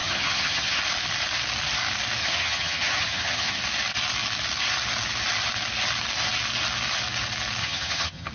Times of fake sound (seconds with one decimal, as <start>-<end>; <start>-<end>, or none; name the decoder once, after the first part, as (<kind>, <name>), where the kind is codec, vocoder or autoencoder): 0.0-0.8 (vocoder, HiFi-GAN); 2.2-3.6; 7.6-8.3